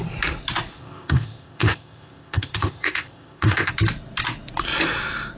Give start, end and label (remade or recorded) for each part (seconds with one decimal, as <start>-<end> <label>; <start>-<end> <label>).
0.0-0.7 recorded; 0.7-3.7 remade; 3.7-5.4 recorded

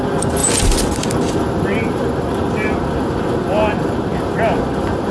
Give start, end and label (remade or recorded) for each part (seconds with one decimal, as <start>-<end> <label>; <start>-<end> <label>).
0.0-0.4 remade; 0.4-1.3 recorded; 1.3-5.1 remade

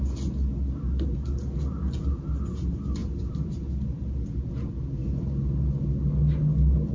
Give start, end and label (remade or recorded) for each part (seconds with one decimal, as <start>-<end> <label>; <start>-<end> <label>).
0.0-3.0 recorded; 3.0-3.6 remade; 3.6-6.9 recorded

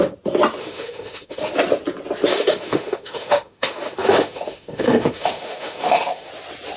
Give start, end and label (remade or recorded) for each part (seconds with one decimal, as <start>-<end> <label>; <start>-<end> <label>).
0.0-0.6 recorded; 0.6-1.5 remade; 1.5-2.3 recorded; 2.3-6.3 remade; 6.3-6.8 recorded